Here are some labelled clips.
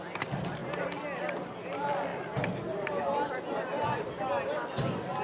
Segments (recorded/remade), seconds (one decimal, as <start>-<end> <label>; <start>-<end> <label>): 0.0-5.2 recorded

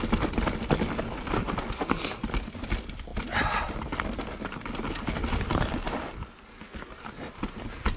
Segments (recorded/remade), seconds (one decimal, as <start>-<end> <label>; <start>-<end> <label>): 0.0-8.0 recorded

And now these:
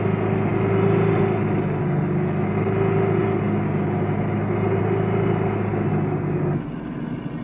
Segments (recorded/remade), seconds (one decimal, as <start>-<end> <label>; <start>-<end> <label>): 0.0-7.4 recorded

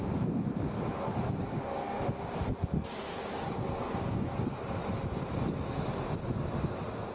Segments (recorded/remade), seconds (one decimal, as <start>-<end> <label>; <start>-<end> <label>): 0.0-0.9 recorded; 0.9-4.3 remade; 4.3-7.1 recorded

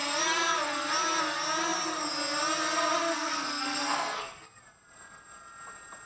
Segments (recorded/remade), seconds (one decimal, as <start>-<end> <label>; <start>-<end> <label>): 0.0-3.1 recorded; 3.1-4.6 remade; 4.6-6.1 recorded

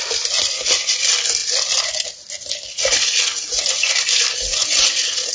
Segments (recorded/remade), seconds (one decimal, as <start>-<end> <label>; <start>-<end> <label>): 0.0-4.5 recorded; 4.5-5.3 remade